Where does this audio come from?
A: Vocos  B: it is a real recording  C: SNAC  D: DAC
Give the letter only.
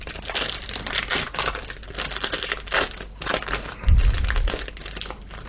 B